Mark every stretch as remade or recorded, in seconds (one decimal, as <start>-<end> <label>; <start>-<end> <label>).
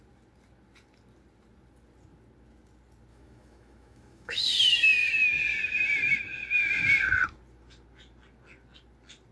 0.0-3.1 recorded; 3.1-4.4 remade; 4.4-9.3 recorded